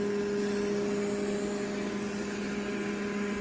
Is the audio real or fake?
real